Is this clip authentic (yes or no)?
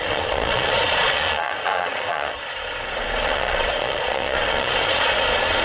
no